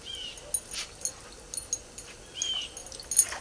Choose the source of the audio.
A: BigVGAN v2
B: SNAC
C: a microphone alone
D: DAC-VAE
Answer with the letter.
C